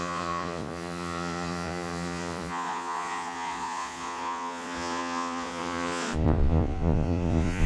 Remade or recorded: remade